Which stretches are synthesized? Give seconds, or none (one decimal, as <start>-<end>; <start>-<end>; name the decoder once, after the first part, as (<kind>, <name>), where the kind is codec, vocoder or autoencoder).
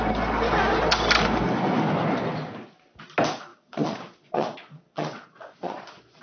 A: 3.5-6.2 (vocoder, Vocos)